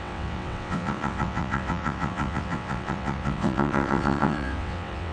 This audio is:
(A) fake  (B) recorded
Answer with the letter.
A